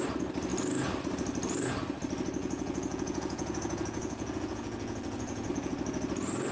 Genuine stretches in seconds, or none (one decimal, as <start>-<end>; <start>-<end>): 0.0-2.4; 5.7-6.5